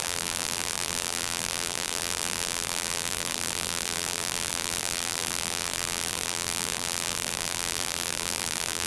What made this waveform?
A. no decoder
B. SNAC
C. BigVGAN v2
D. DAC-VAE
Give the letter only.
C